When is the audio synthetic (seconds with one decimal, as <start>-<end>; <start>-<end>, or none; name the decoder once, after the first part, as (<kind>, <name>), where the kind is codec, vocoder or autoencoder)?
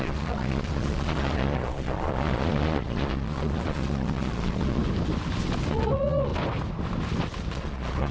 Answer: 0.0-4.8 (vocoder, Vocos); 5.7-6.3; 7.5-8.1